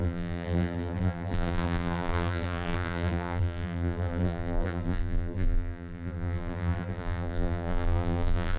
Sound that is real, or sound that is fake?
fake